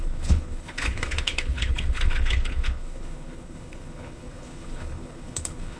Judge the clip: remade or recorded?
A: remade